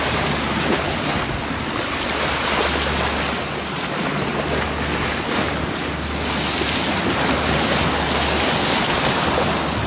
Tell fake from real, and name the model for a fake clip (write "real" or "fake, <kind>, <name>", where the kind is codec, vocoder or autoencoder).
real